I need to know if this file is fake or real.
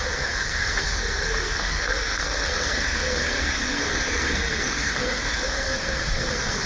fake